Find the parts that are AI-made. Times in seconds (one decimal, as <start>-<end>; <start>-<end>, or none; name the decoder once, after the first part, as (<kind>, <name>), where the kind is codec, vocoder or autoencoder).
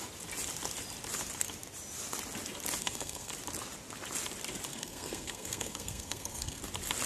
2.8-3.3 (codec, SNAC); 4.7-6.6